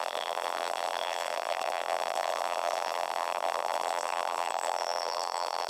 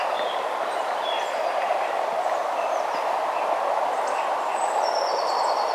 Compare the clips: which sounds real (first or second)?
second